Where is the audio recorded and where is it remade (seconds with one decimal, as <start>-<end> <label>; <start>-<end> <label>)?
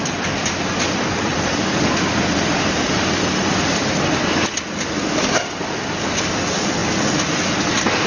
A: 0.0-1.3 recorded; 1.3-5.7 remade; 5.7-8.1 recorded